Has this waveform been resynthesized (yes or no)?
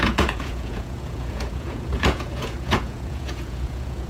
yes